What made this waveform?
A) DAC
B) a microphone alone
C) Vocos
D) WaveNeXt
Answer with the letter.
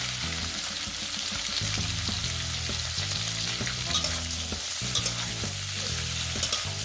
B